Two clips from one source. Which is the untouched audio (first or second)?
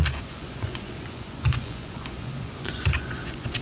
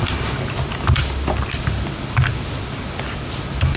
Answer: second